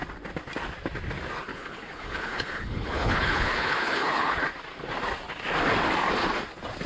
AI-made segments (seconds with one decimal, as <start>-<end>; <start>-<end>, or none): 1.5-4.4